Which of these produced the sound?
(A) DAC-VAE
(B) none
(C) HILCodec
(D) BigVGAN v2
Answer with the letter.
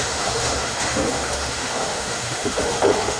A